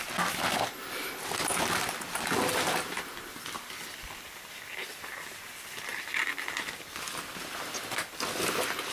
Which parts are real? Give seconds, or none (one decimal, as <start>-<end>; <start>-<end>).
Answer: 0.0-8.9